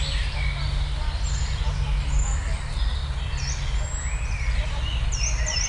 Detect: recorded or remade recorded